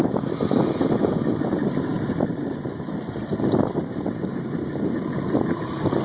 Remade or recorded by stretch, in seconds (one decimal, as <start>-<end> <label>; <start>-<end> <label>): 0.0-6.0 recorded